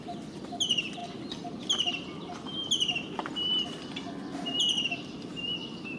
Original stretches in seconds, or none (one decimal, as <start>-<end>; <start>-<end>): 0.0-6.0